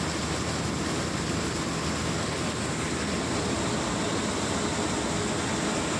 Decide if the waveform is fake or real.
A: real